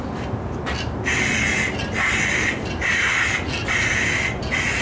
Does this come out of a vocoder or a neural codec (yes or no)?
no